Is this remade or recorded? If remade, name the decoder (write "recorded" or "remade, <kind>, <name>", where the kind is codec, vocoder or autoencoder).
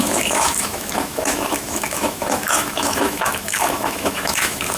remade, autoencoder, DAC-VAE